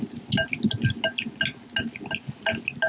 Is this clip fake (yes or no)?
no